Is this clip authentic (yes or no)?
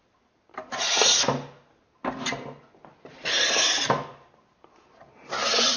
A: yes